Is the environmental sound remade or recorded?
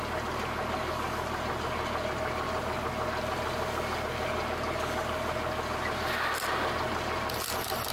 recorded